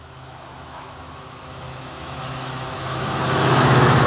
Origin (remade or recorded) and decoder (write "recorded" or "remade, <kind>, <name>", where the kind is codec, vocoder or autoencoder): remade, autoencoder, DAC-VAE